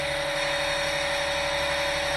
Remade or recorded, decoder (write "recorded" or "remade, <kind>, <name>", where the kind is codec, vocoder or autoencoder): remade, autoencoder, DAC-VAE